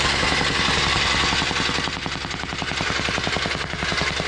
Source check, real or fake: real